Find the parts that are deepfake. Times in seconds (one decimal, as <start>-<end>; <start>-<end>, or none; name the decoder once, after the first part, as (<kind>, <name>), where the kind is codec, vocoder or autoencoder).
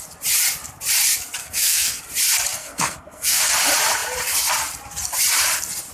1.4-2.0 (codec, SNAC); 2.5-3.4